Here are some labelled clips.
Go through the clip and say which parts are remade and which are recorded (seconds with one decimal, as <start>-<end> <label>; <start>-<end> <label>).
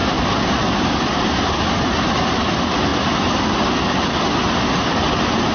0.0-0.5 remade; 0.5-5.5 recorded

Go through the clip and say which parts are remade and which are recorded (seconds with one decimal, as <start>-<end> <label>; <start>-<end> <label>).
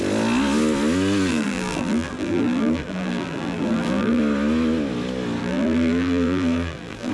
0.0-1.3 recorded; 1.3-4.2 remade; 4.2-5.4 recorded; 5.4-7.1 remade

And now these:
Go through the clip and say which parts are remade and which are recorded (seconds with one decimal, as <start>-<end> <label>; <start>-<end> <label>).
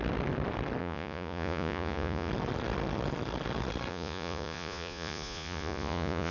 0.0-0.8 recorded; 0.8-2.3 remade; 2.3-3.9 recorded; 3.9-6.3 remade